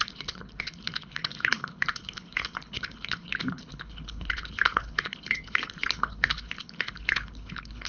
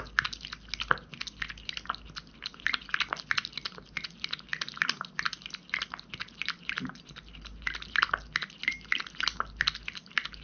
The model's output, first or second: first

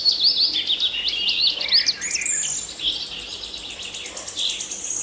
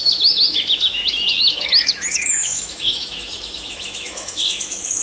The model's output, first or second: second